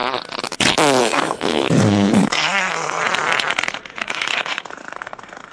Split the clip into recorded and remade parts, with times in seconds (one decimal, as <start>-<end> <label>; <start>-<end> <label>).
0.0-1.0 recorded; 1.0-3.0 remade; 3.0-4.1 recorded; 4.1-5.5 remade